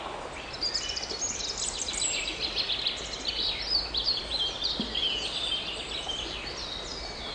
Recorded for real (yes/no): yes